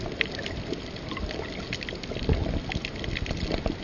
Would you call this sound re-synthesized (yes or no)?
no